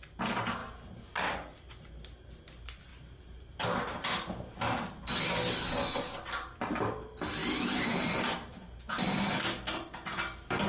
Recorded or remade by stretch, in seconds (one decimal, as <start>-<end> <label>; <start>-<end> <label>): 0.0-2.9 recorded; 2.9-5.0 remade; 5.0-7.4 recorded; 7.4-9.4 remade; 9.4-10.7 recorded